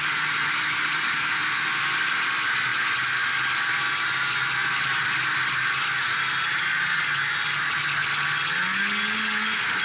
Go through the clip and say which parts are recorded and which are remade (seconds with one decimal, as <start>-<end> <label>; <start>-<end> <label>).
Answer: 0.0-9.8 recorded